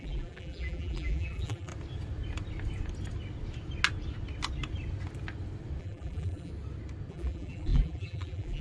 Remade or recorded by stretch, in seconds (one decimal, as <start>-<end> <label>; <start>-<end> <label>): 0.0-1.7 remade; 1.7-5.8 recorded; 5.8-6.5 remade; 6.5-7.1 recorded; 7.1-8.6 remade

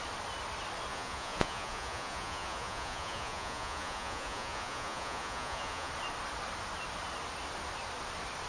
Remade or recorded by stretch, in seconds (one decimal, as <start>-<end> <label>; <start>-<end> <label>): 0.0-0.9 recorded; 0.9-5.9 remade; 5.9-8.5 recorded

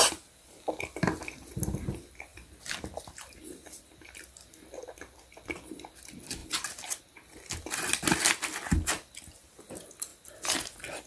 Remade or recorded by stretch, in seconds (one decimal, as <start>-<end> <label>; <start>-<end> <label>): 0.0-2.3 recorded; 2.3-5.7 remade; 5.7-6.4 recorded; 6.4-7.0 remade; 7.0-11.1 recorded

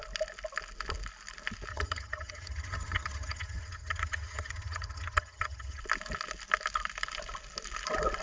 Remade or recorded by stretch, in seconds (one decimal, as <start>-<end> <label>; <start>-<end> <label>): 0.0-1.7 recorded; 1.7-5.8 remade; 5.8-8.2 recorded

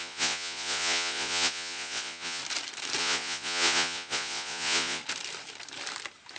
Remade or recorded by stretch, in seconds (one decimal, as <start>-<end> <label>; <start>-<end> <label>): 0.0-2.4 remade; 2.4-3.0 recorded; 3.0-5.0 remade; 5.0-6.4 recorded

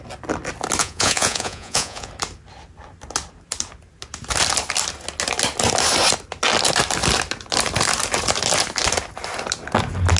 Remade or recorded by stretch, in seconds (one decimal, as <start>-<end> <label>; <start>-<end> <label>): 0.0-0.8 recorded; 0.8-2.1 remade; 2.1-10.2 recorded